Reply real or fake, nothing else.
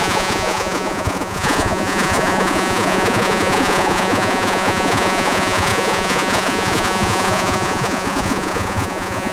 fake